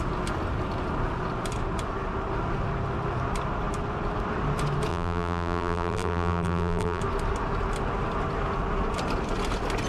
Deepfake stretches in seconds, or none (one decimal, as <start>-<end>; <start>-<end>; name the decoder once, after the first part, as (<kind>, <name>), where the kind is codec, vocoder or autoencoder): 4.9-7.0 (vocoder, BigVGAN v2)